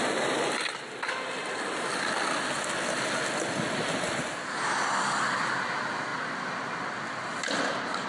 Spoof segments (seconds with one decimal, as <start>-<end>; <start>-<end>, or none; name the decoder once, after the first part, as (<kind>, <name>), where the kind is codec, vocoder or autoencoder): none